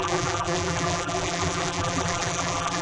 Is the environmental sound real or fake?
fake